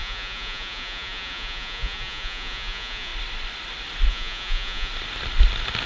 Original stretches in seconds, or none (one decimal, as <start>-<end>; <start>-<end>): 3.1-4.1; 4.9-5.9